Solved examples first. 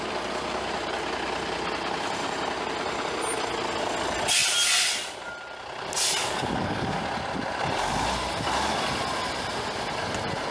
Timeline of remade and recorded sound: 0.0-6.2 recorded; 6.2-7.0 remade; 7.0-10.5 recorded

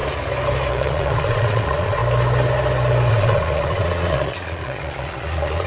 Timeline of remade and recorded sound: 0.0-0.7 recorded; 0.7-2.0 remade; 2.0-3.1 recorded; 3.1-5.7 remade

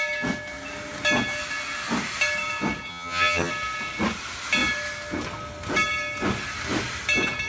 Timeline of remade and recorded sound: 0.0-2.9 recorded; 2.9-3.5 remade; 3.5-7.5 recorded

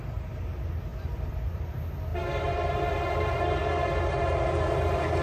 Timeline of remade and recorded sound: 0.0-0.9 recorded; 0.9-1.6 remade; 1.6-5.2 recorded

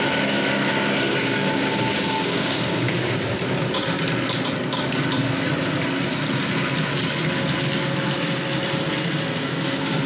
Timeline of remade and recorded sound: 0.0-1.1 recorded; 1.1-3.4 remade; 3.4-10.1 recorded